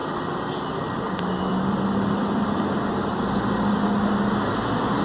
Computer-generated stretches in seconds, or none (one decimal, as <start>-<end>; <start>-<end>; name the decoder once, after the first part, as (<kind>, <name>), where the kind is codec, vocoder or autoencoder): none